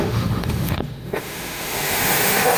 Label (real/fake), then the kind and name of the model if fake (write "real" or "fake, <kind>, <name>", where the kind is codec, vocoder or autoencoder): fake, autoencoder, DAC-VAE